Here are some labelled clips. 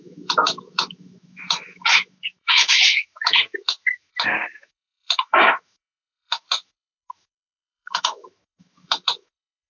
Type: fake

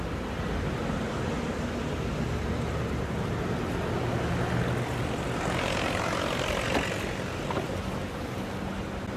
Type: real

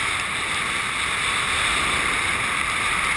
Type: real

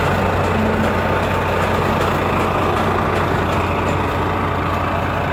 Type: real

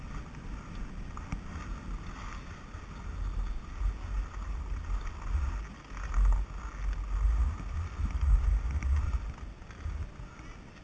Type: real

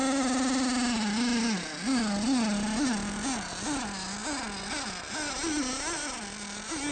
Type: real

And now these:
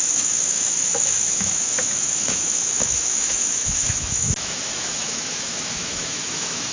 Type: fake